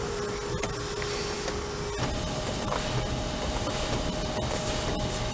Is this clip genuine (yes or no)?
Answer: yes